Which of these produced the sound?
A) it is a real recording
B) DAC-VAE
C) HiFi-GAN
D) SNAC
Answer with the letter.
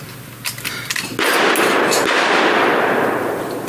A